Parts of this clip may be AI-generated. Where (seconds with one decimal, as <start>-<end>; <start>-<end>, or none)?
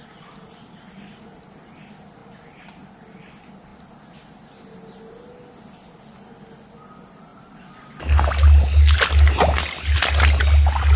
none